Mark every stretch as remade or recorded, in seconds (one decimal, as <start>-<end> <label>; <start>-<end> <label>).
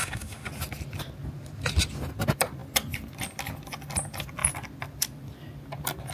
0.0-0.5 remade; 0.5-6.1 recorded